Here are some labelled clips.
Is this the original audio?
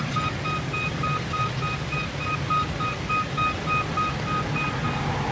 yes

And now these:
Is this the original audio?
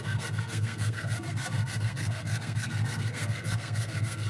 no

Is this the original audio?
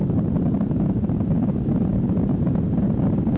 yes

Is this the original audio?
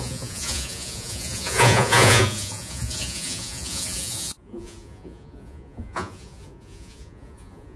no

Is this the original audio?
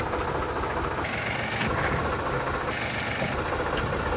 yes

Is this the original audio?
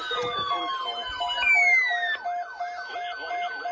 yes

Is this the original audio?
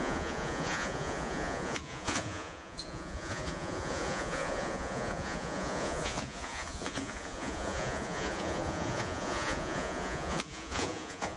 no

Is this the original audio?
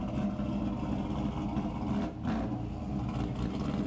yes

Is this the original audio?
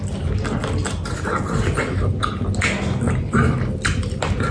yes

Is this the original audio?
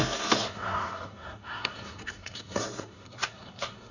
no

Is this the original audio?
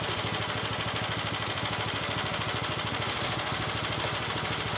yes